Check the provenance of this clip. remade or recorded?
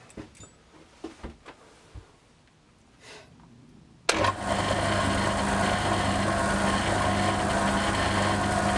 recorded